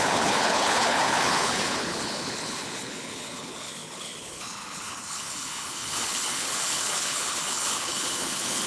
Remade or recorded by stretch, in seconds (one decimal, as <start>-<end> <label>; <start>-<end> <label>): 0.0-8.7 remade